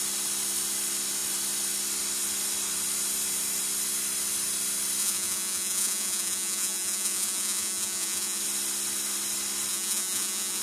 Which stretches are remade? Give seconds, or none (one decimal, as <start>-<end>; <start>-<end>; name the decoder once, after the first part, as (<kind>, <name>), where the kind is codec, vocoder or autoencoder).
5.0-8.4 (vocoder, Vocos); 9.7-10.6